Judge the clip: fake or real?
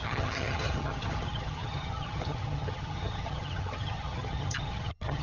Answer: fake